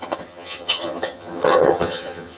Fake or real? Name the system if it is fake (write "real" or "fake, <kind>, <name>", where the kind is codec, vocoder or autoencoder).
fake, vocoder, HiFi-GAN